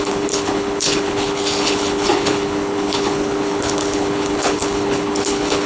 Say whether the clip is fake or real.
fake